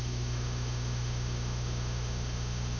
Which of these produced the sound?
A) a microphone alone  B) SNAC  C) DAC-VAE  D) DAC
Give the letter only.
C